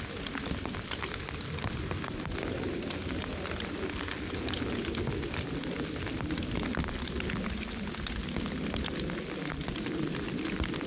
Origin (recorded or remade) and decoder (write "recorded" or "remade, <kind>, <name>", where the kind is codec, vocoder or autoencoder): recorded